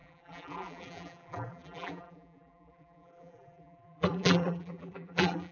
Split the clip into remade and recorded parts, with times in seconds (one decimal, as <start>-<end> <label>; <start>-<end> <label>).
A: 0.0-5.5 remade